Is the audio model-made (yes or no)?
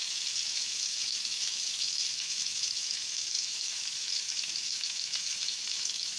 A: yes